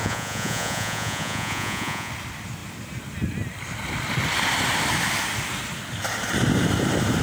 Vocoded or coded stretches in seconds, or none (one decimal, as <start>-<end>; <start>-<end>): 0.0-2.1